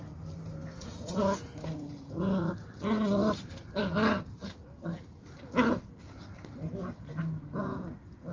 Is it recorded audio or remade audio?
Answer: recorded